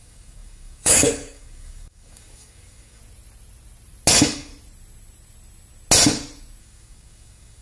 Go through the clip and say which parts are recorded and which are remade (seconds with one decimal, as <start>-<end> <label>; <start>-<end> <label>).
0.0-3.0 remade; 3.0-4.1 recorded; 4.1-4.5 remade; 4.5-6.6 recorded; 6.6-7.6 remade